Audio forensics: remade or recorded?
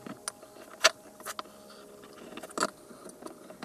recorded